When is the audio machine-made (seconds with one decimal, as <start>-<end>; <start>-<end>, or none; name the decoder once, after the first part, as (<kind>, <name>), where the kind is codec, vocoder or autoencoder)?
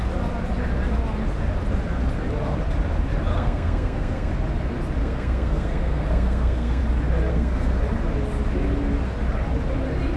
3.3-4.3 (codec, SNAC); 5.0-6.8; 7.3-7.8